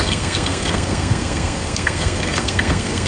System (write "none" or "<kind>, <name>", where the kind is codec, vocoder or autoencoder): codec, SNAC